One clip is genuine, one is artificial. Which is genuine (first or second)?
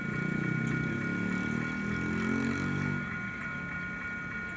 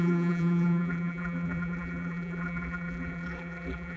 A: first